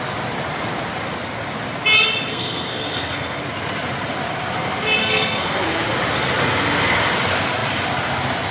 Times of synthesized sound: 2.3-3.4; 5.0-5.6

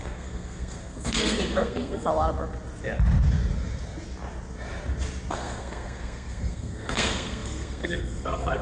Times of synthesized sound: 0.0-2.1; 5.3-8.6

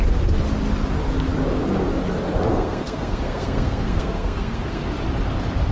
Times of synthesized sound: 2.5-4.8

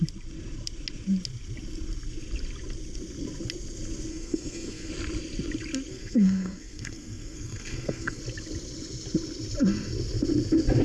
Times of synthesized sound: 4.1-4.9; 5.9-8.2

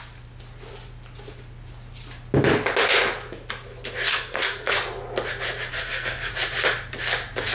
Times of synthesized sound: 4.1-4.7; 5.7-6.3

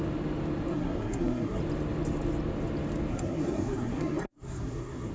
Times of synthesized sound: 0.7-1.6; 3.1-5.1

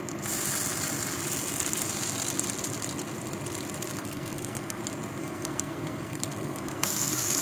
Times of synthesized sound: 4.0-4.8; 5.2-7.4